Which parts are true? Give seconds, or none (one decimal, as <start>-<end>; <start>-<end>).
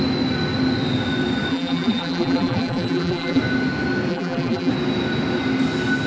0.0-1.5; 3.4-4.1; 4.7-6.1